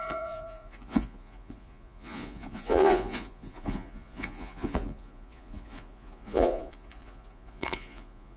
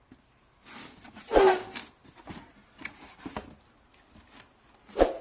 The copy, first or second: first